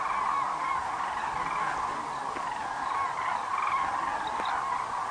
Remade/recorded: recorded